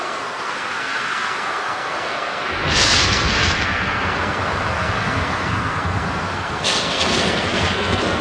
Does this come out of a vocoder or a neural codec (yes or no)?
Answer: yes